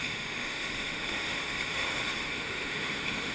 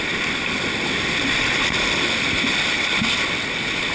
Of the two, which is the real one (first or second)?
second